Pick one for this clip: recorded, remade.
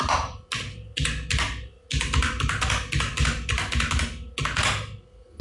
recorded